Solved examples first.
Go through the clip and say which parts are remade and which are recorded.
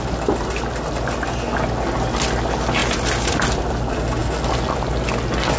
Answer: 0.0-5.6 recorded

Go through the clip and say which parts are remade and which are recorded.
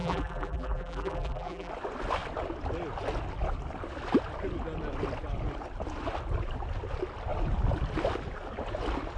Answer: 0.0-1.7 remade; 1.7-9.2 recorded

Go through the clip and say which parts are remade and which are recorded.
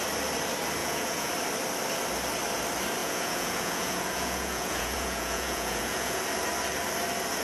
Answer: 0.0-0.8 recorded; 0.8-1.3 remade; 1.3-3.0 recorded; 3.0-6.2 remade; 6.2-7.4 recorded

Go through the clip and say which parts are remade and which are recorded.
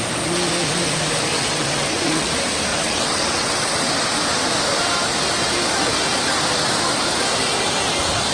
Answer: 0.0-1.3 recorded; 1.3-2.3 remade; 2.3-2.7 recorded; 2.7-3.9 remade; 3.9-8.3 recorded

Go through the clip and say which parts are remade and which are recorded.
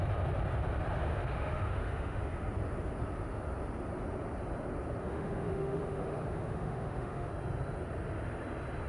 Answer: 0.0-1.1 recorded; 1.1-2.2 remade; 2.2-5.0 recorded; 5.0-7.3 remade; 7.3-8.9 recorded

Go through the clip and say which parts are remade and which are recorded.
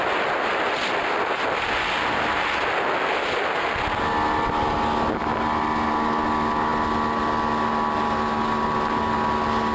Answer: 0.0-9.7 recorded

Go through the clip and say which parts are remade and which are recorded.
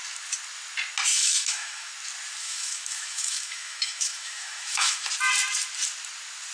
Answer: 0.0-1.1 recorded; 1.1-1.9 remade; 1.9-2.4 recorded; 2.4-5.1 remade; 5.1-6.5 recorded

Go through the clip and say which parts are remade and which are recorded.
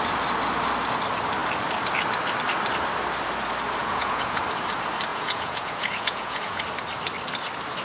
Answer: 0.0-3.8 recorded; 3.8-4.4 remade; 4.4-5.1 recorded; 5.1-6.6 remade; 6.6-7.8 recorded